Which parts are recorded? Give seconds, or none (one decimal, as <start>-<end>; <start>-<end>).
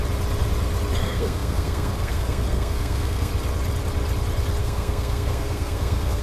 0.0-1.0; 3.3-4.6